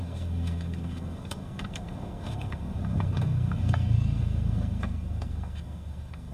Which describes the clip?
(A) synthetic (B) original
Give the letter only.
A